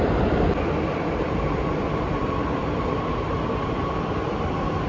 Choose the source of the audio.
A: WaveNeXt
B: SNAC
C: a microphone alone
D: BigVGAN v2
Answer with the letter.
D